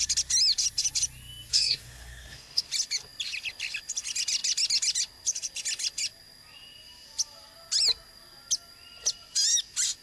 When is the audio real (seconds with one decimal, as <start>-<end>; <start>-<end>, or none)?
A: 0.0-1.5; 2.7-10.0